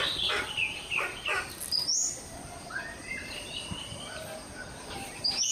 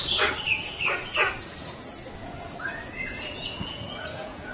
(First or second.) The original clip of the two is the first